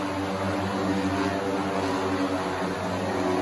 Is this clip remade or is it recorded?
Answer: recorded